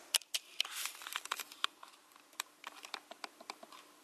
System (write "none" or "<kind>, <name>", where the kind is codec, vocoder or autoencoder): none